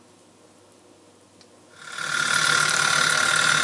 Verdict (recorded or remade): recorded